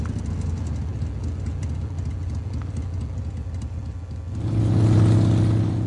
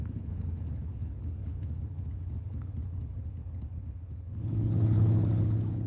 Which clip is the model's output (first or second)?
second